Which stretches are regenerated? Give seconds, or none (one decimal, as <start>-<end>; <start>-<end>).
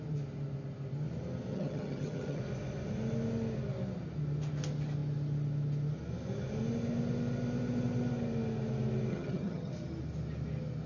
1.5-2.4; 9.1-9.7